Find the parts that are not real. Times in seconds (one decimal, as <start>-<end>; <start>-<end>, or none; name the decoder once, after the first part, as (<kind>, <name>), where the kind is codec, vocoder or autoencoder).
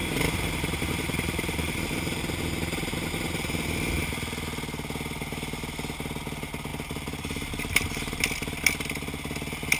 0.0-2.2 (vocoder, BigVGAN v2); 6.7-8.2